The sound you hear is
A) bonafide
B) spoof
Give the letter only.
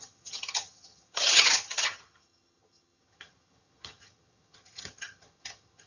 B